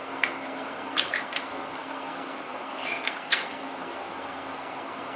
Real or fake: fake